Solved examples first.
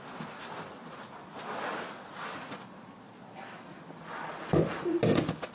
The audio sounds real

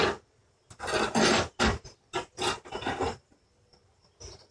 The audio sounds real